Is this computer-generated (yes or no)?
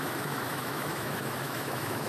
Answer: yes